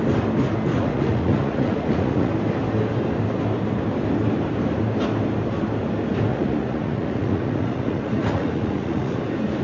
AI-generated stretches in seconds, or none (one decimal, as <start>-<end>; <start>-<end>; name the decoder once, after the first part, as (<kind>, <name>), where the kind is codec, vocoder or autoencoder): 0.7-2.3 (vocoder, Vocos); 6.3-9.2